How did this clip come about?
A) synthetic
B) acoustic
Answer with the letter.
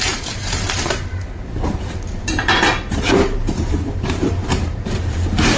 A